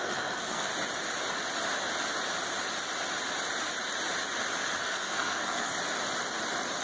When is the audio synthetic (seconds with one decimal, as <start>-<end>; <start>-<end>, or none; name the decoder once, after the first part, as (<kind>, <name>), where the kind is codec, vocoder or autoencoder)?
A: 0.0-0.7 (codec, SNAC); 4.8-5.7